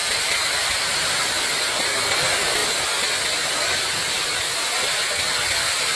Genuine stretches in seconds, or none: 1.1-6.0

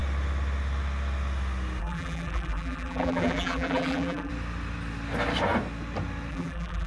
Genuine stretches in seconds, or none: 0.0-1.8; 4.3-6.3

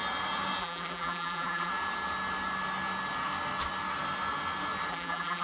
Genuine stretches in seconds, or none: 0.0-0.6; 1.7-4.9

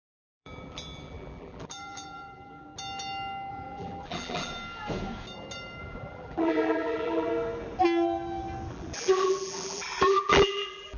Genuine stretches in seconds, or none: 2.7-3.5; 4.5-5.8; 7.3-8.7

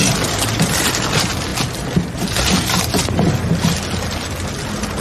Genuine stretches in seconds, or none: 0.0-5.0

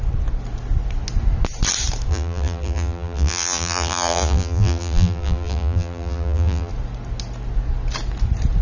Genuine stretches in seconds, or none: 0.0-2.1; 6.7-8.6